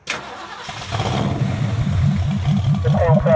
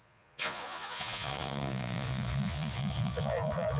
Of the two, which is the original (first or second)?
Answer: first